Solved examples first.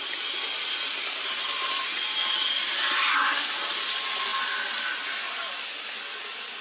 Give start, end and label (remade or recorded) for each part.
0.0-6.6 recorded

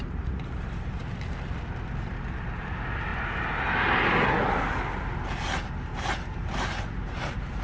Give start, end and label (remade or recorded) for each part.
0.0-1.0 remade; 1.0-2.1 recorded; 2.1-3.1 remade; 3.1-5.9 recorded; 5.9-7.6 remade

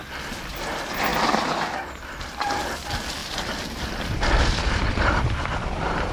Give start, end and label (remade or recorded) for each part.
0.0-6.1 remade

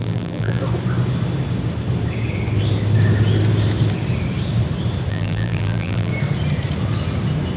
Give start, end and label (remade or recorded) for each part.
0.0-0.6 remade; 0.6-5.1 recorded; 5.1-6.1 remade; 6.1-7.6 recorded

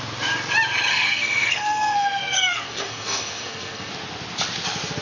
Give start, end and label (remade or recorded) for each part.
0.0-0.9 recorded; 0.9-3.9 remade; 3.9-5.0 recorded

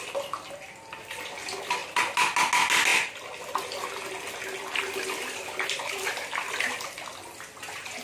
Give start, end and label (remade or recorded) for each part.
0.0-8.0 recorded

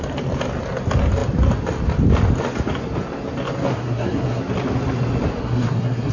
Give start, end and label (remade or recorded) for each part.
0.0-3.7 recorded; 3.7-4.4 remade; 4.4-5.4 recorded; 5.4-6.1 remade

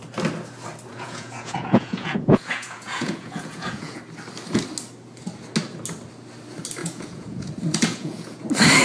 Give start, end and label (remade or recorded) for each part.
0.0-0.9 recorded; 0.9-4.0 remade; 4.0-6.8 recorded; 6.8-7.5 remade; 7.5-7.9 recorded; 7.9-8.4 remade; 8.4-8.8 recorded